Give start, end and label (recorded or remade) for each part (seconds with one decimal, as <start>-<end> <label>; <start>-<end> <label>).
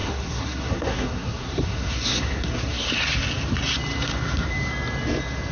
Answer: 0.0-2.9 remade; 2.9-5.5 recorded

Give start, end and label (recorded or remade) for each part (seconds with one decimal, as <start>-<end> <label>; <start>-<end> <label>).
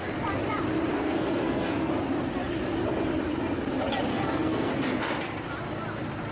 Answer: 0.0-1.0 recorded; 1.0-1.9 remade; 1.9-4.1 recorded; 4.1-4.7 remade; 4.7-6.3 recorded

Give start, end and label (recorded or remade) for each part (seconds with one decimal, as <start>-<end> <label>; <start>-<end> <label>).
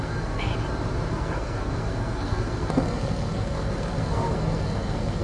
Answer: 0.0-0.5 remade; 0.5-1.1 recorded; 1.1-5.2 remade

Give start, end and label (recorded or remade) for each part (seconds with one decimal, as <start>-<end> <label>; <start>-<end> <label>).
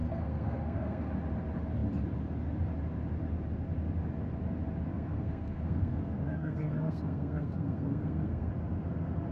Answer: 0.0-1.1 remade; 1.1-4.9 recorded; 4.9-8.5 remade; 8.5-9.3 recorded